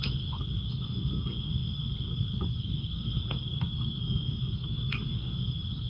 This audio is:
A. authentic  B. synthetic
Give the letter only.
B